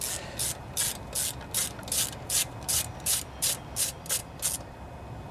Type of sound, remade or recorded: recorded